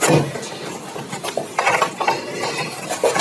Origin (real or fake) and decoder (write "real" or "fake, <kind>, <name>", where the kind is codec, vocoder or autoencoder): real